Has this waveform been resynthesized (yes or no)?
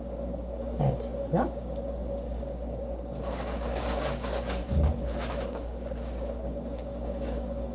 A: yes